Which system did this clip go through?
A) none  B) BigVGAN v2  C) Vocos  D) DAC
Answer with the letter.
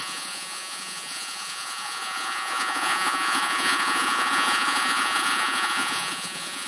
C